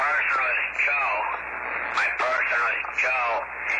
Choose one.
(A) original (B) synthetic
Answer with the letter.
A